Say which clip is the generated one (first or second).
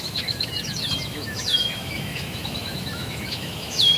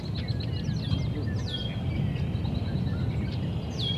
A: first